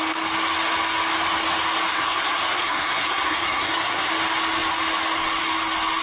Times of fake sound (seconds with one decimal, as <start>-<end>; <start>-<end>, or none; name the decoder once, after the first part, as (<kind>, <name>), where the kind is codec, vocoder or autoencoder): 1.9-4.1 (codec, SNAC)